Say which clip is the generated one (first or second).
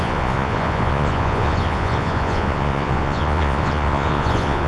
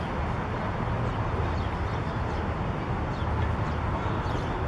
first